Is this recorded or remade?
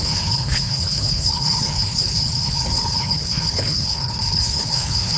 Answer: remade